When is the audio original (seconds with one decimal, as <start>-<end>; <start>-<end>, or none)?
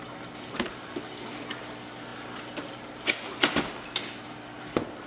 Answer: 0.0-5.1